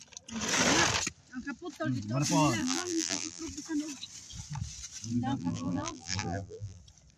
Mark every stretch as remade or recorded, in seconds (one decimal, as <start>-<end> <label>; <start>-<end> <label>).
0.0-2.6 recorded; 2.6-3.4 remade; 3.4-5.4 recorded; 5.4-6.8 remade; 6.8-7.2 recorded